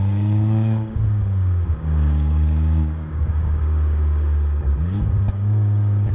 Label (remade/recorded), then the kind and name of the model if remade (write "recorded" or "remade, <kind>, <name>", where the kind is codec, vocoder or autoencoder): remade, codec, DAC